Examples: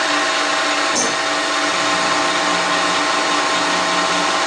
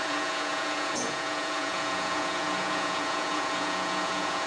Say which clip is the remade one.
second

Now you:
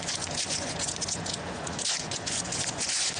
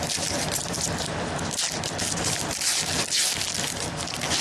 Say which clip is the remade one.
first